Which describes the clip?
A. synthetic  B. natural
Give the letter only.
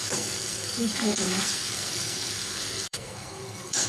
A